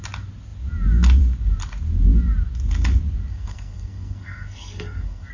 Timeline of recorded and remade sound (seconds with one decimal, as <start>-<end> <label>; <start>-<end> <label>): 0.0-3.3 recorded; 3.3-5.3 remade